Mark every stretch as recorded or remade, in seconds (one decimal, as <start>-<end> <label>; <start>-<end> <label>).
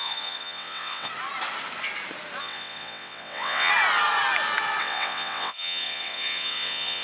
0.0-1.1 remade; 1.1-2.4 recorded; 2.4-3.7 remade; 3.7-4.8 recorded; 4.8-7.0 remade